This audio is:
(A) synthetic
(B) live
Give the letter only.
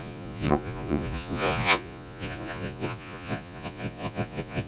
A